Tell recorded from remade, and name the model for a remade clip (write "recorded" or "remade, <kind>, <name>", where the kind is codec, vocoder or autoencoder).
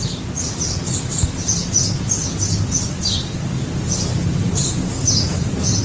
recorded